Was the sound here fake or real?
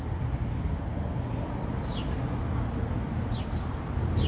real